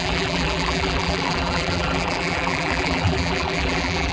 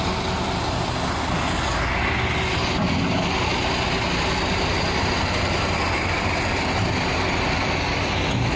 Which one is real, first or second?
second